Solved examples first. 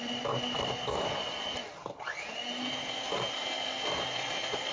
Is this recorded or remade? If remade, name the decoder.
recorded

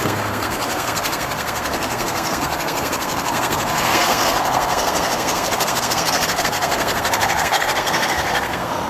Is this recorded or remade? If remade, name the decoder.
remade, codec, SNAC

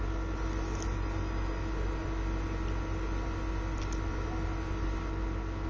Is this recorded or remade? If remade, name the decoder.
recorded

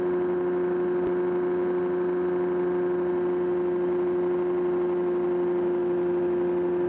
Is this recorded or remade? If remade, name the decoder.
recorded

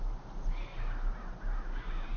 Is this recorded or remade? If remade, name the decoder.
recorded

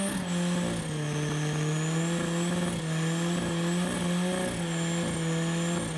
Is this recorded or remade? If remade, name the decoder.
recorded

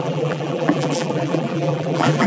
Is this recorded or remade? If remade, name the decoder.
remade, vocoder, BigVGAN v2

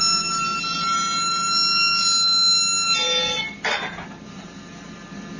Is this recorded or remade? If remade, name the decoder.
recorded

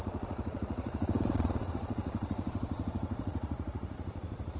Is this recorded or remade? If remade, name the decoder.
remade, vocoder, Vocos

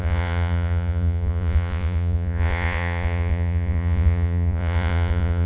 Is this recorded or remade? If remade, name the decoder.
remade, vocoder, Vocos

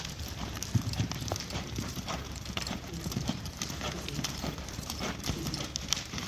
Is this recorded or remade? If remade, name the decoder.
remade, vocoder, BigVGAN v2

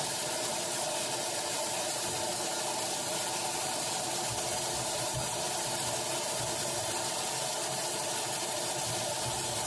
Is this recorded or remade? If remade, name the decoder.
recorded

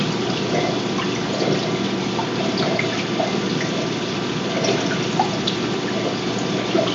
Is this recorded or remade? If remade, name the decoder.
recorded